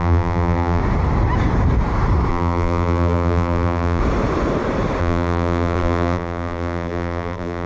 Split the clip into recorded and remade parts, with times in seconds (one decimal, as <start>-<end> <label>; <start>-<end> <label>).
0.0-0.8 remade; 0.8-2.3 recorded; 2.3-4.0 remade; 4.0-5.0 recorded; 5.0-7.7 remade